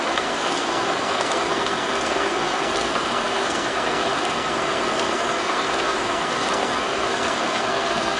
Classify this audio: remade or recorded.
remade